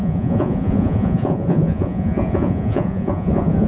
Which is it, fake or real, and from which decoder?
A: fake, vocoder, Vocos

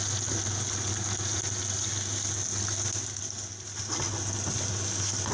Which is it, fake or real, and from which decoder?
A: real